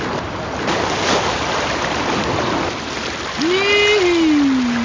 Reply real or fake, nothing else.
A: real